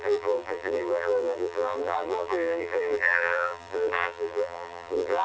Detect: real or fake fake